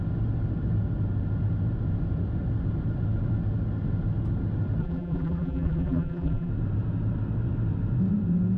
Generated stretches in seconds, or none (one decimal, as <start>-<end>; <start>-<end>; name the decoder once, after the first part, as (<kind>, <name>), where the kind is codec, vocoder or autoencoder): 4.8-6.5 (vocoder, BigVGAN v2)